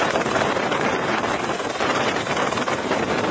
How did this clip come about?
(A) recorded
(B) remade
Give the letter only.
B